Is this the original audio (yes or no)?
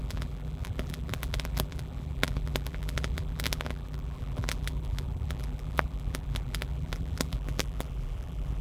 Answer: no